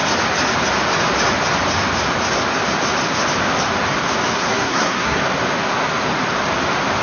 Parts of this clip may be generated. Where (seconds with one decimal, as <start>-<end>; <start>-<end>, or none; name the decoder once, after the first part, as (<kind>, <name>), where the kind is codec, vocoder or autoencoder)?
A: 4.3-5.2 (codec, SNAC)